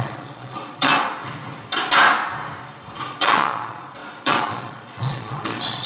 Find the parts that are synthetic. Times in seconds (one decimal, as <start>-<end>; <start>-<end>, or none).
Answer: 0.0-0.9; 3.1-5.9